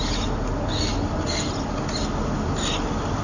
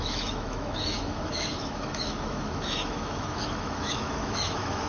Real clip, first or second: first